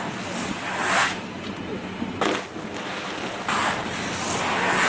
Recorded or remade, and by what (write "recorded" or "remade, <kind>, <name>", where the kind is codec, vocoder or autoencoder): recorded